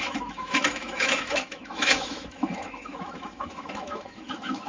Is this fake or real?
fake